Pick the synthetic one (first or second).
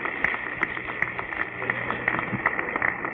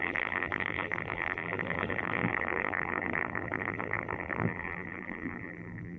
second